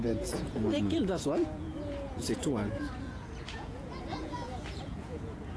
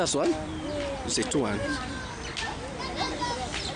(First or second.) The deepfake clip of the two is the first